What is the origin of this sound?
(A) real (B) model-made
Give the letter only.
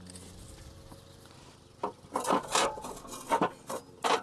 A